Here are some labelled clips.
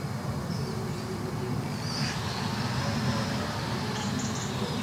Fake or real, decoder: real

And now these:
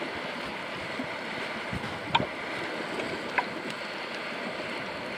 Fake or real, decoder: real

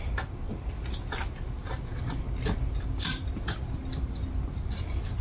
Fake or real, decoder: real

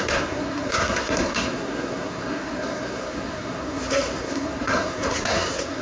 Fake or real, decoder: fake, codec, SNAC